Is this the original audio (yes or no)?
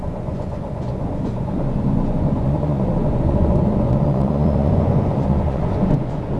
no